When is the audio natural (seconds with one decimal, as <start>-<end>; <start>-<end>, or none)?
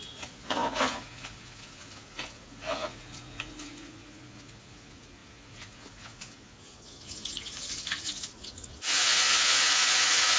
none